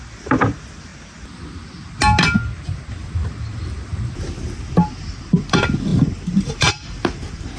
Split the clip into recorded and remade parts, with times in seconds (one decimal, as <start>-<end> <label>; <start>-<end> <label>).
0.0-0.9 remade; 0.9-2.9 recorded; 2.9-3.9 remade; 3.9-4.7 recorded; 4.7-7.6 remade